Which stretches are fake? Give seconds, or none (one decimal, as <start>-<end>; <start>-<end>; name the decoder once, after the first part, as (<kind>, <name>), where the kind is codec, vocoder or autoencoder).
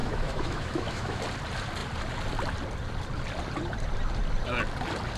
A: 0.0-1.2 (autoencoder, DAC-VAE)